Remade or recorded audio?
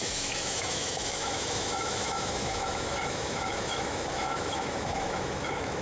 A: remade